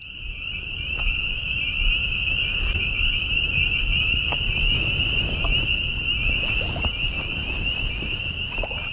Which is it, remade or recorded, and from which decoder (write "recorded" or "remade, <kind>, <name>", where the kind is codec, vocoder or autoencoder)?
recorded